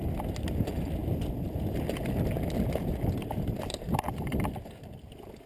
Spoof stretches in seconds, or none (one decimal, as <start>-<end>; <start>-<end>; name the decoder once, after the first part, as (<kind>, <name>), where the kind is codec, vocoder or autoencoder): 1.0-3.4 (vocoder, BigVGAN v2)